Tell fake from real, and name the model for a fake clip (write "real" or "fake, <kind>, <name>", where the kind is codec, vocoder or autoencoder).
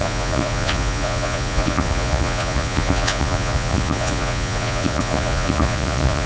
fake, vocoder, Vocos